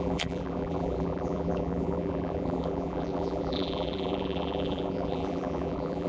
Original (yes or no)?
no